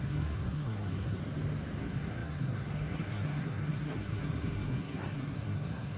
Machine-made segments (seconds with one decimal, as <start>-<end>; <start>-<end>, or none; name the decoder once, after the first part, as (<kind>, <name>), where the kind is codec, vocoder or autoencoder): 0.0-1.2 (codec, SNAC); 1.8-6.0